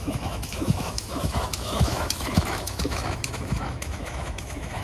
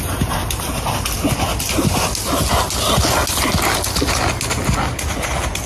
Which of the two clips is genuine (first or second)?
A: second